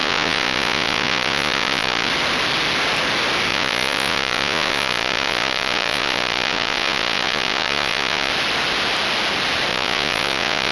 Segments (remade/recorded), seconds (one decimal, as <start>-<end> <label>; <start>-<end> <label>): 0.0-2.1 remade; 2.1-3.5 recorded; 3.5-8.3 remade; 8.3-9.7 recorded; 9.7-10.7 remade

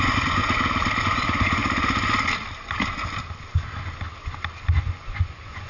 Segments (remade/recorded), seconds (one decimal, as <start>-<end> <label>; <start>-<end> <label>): 0.0-0.4 remade; 0.4-1.0 recorded; 1.0-1.6 remade; 1.6-4.8 recorded; 4.8-5.7 remade